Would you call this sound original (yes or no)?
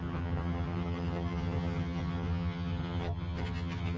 no